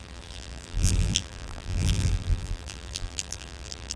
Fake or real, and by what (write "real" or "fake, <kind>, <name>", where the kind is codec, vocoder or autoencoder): fake, vocoder, BigVGAN v2